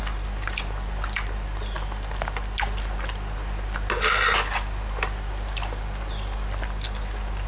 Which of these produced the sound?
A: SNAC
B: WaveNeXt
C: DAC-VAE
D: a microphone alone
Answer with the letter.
D